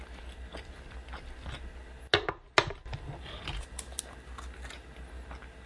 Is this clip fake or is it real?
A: real